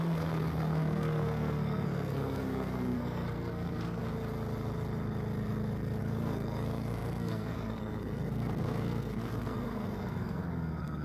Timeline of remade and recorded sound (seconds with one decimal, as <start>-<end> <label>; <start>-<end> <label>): 0.0-4.0 remade; 4.0-6.0 recorded; 6.0-11.0 remade